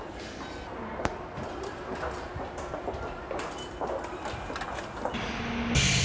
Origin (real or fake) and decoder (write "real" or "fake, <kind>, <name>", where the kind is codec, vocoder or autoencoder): real